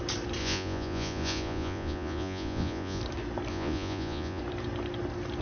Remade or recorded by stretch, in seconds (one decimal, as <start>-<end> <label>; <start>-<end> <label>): 0.0-0.4 recorded; 0.4-3.0 remade; 3.0-3.5 recorded; 3.5-4.4 remade; 4.4-5.4 recorded